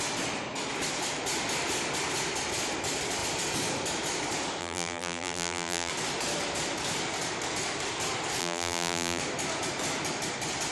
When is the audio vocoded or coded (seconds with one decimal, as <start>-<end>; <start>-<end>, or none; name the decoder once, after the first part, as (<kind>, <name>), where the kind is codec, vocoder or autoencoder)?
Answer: 4.6-5.9 (vocoder, BigVGAN v2); 8.4-9.2